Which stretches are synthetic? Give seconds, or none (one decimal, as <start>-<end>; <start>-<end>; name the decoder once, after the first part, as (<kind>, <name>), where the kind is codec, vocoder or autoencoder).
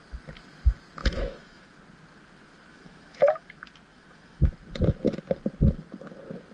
1.0-1.7 (autoencoder, DAC-VAE); 2.7-3.5; 3.9-4.5